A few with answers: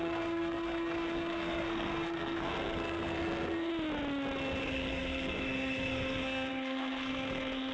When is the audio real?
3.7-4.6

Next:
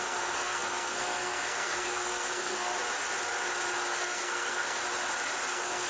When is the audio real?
2.7-3.9; 4.8-5.5

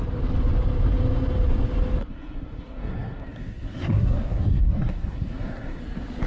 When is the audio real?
0.0-2.0; 5.8-6.3

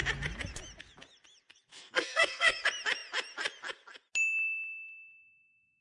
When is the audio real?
0.0-1.7; 2.6-5.8